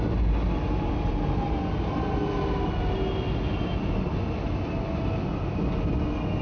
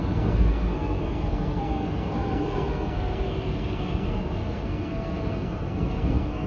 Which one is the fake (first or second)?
second